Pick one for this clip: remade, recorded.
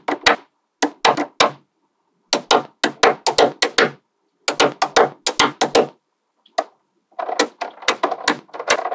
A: recorded